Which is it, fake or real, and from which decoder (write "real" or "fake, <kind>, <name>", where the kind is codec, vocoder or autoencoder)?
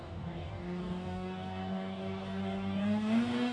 fake, codec, DAC